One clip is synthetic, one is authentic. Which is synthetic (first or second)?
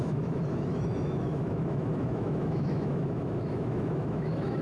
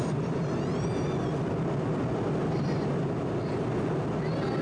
first